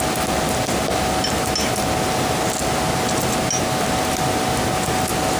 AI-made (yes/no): no